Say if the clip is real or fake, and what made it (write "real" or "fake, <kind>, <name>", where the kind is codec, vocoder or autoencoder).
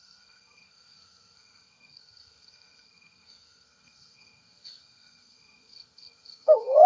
fake, codec, SNAC